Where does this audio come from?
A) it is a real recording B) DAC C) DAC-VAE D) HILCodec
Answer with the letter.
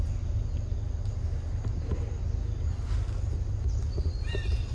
A